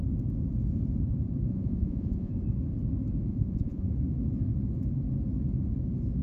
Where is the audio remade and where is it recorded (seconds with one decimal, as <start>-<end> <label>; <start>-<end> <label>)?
0.0-1.5 recorded; 1.5-2.3 remade; 2.3-3.3 recorded; 3.3-3.9 remade; 3.9-6.2 recorded